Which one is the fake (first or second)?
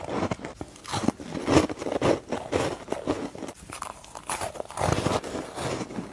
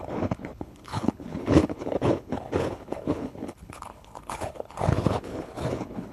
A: second